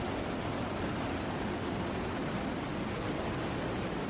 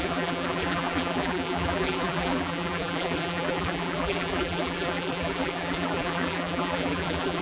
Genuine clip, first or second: first